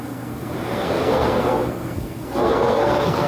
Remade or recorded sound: remade